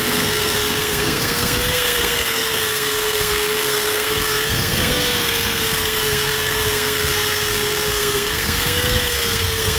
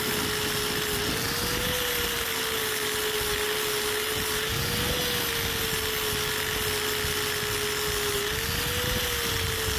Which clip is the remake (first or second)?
first